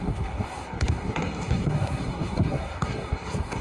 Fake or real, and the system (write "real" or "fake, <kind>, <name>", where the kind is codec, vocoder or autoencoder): fake, codec, SNAC